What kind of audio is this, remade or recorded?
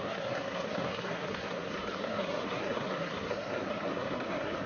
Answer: remade